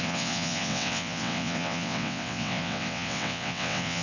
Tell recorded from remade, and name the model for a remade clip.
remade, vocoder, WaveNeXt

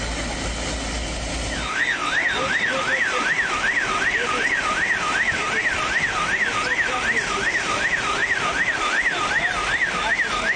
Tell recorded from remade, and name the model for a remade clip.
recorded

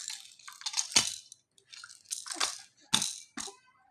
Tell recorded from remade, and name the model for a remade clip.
recorded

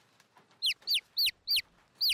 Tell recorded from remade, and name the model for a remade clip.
recorded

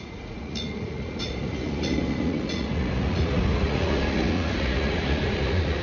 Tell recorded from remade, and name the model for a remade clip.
remade, vocoder, Vocos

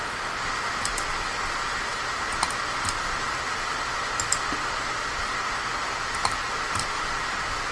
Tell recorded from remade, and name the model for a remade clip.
remade, vocoder, BigVGAN v2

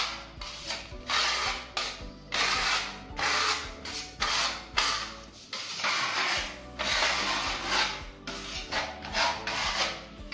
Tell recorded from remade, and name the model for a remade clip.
recorded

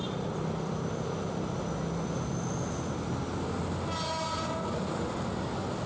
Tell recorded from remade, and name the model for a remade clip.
recorded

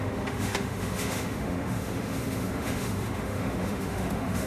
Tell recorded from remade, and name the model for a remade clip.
remade, autoencoder, DAC-VAE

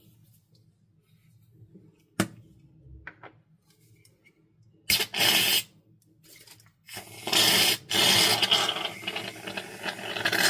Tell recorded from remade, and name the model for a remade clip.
recorded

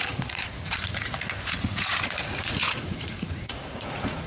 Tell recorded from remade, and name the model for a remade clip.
remade, vocoder, Vocos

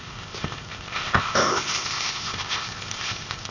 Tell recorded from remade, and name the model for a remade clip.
remade, codec, ZipCodec